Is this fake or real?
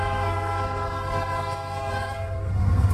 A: fake